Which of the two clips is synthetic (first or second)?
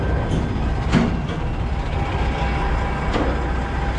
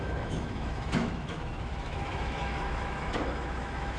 second